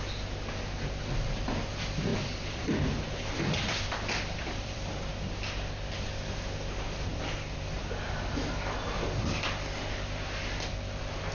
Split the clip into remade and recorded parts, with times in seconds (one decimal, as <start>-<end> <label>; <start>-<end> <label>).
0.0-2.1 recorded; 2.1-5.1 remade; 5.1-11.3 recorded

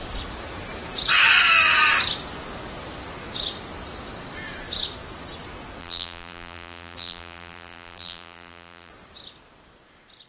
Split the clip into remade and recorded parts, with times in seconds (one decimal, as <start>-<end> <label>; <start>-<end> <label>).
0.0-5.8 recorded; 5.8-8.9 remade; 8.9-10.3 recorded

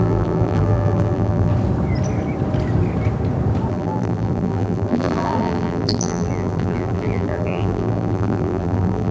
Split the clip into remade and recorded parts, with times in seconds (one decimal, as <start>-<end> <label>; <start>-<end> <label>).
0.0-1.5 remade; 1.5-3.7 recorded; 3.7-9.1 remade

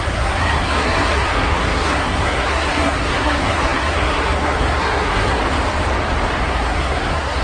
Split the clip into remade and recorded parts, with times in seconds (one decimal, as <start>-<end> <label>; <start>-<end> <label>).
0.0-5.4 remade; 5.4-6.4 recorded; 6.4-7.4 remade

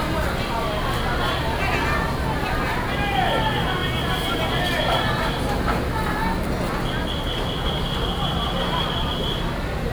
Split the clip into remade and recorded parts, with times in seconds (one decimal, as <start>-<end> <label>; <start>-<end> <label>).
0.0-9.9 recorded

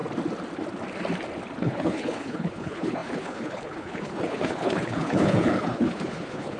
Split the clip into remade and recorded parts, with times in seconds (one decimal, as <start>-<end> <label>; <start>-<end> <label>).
0.0-1.6 recorded; 1.6-6.6 remade

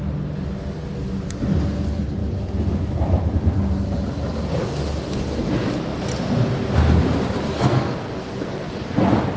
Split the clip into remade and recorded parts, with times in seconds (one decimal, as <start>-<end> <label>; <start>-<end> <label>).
0.0-7.5 recorded; 7.5-8.7 remade; 8.7-9.4 recorded